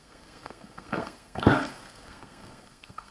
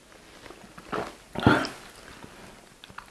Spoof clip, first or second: first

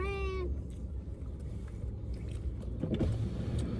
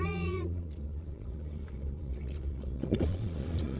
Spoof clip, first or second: second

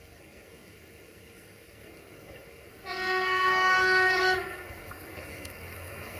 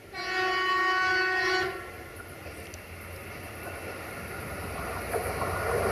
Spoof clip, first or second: first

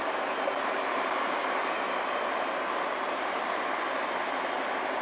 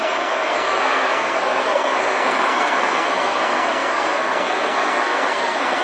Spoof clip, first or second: second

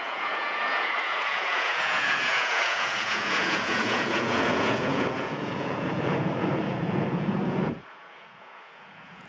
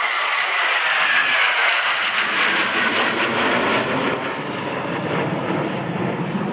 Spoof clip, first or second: first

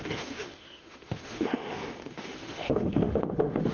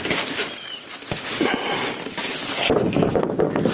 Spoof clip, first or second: first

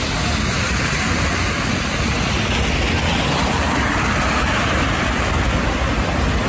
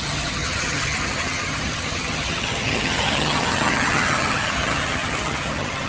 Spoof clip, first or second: second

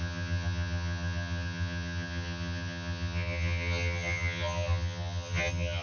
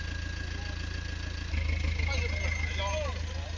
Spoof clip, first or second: first